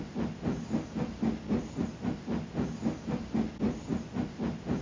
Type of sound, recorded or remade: recorded